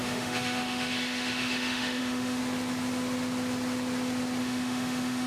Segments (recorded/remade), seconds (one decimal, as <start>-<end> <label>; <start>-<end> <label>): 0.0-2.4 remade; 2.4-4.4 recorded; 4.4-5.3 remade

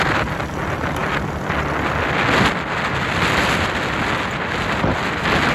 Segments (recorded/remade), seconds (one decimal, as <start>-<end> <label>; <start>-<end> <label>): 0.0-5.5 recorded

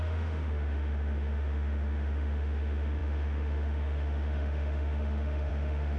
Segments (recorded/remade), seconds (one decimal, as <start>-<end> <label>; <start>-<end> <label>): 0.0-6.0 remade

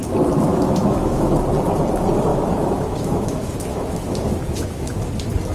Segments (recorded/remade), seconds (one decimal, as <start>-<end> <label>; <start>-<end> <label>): 0.0-0.5 recorded; 0.5-1.3 remade; 1.3-2.3 recorded; 2.3-5.1 remade; 5.1-5.5 recorded

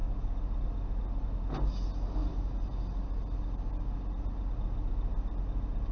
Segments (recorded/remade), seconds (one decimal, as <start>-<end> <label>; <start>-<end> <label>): 0.0-5.9 recorded